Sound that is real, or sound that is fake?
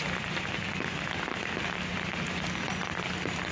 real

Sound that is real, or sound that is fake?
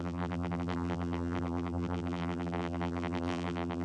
fake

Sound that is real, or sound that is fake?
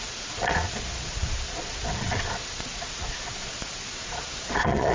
fake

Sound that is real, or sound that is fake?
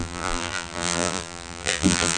fake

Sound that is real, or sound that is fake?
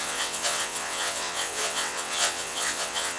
fake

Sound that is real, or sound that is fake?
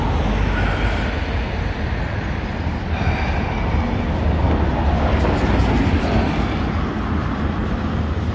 real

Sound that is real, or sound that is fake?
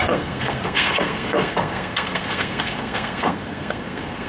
fake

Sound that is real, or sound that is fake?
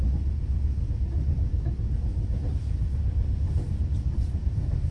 real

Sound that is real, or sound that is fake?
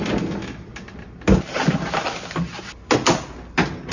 real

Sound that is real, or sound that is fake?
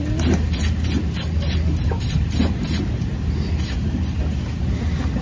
real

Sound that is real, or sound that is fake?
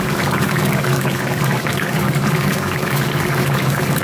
fake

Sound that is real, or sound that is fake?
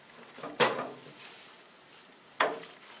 real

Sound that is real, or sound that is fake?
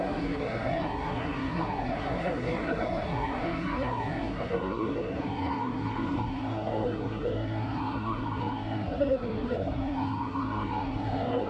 fake